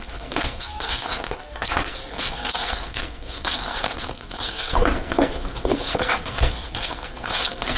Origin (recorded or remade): remade